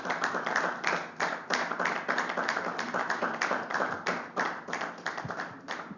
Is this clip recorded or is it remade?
remade